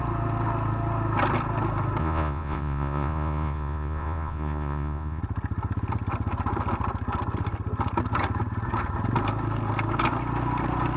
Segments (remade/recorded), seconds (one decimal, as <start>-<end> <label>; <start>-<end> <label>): 0.0-2.0 recorded; 2.0-5.2 remade; 5.2-11.0 recorded